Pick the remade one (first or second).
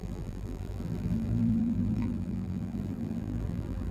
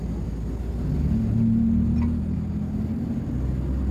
first